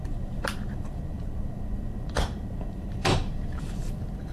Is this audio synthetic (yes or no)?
yes